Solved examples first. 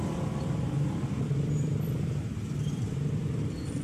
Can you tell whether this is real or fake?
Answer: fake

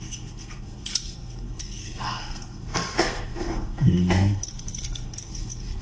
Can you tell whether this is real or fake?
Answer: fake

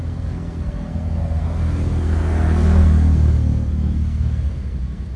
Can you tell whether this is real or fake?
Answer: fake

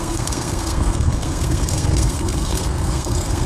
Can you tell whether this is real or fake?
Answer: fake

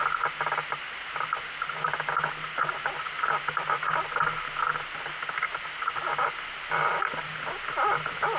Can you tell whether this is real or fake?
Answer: real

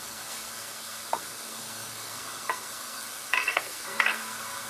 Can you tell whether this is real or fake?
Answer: fake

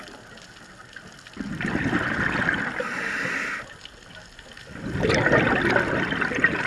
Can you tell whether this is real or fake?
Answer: real